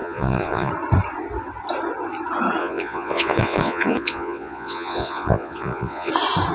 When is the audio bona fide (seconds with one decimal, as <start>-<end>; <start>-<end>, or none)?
0.7-2.6; 6.1-6.5